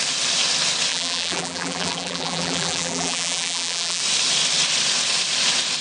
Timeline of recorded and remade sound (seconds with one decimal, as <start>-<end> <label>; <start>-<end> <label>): 0.0-0.9 recorded; 0.9-4.0 remade; 4.0-5.8 recorded